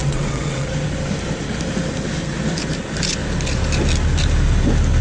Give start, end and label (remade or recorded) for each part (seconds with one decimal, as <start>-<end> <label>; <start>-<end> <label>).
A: 0.0-0.7 remade; 0.7-5.0 recorded